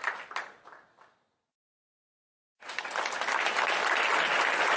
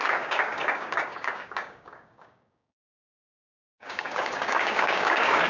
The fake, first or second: second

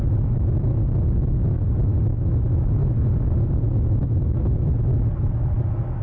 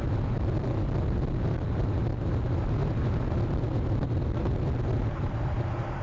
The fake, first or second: second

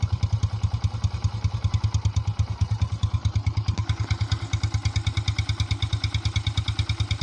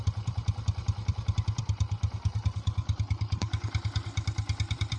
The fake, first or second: second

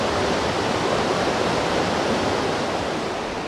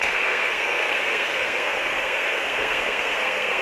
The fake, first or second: second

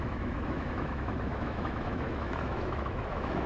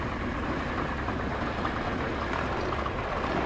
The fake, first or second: first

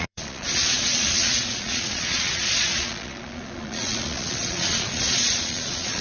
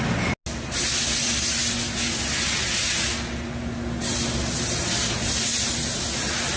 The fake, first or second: first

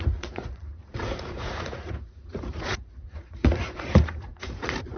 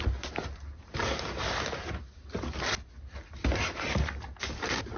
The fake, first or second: first